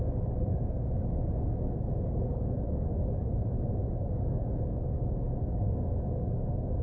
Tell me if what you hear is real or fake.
fake